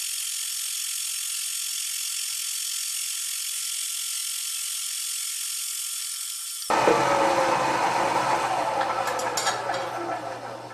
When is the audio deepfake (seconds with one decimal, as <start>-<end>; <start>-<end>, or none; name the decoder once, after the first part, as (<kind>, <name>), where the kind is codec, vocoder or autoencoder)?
none